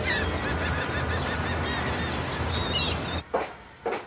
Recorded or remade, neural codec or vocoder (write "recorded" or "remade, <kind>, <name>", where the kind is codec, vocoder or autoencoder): recorded